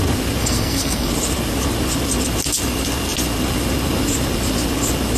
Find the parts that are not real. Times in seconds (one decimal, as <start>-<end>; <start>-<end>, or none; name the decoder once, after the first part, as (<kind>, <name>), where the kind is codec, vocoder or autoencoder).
0.4-1.1 (codec, SNAC)